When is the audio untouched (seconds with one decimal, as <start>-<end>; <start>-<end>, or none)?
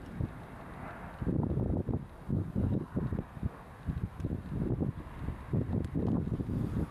0.0-2.3; 2.9-6.9